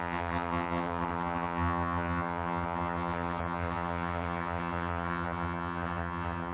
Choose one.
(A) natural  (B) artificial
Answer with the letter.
B